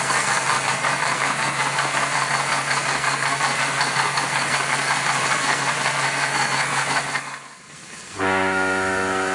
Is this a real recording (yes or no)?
no